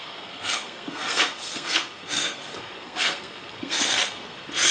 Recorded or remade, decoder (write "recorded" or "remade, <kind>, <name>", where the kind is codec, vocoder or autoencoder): remade, codec, SNAC